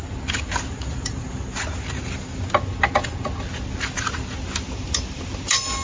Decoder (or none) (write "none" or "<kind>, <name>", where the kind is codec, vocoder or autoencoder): none